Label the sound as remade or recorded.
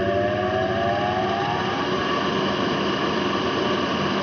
recorded